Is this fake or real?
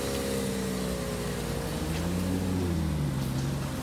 real